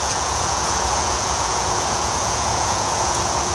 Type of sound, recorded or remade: remade